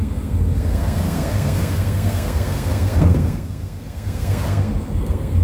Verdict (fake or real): fake